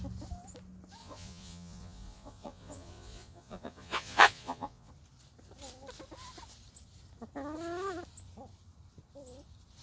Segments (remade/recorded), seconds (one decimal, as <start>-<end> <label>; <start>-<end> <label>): 0.0-1.0 recorded; 1.0-4.9 remade; 4.9-9.8 recorded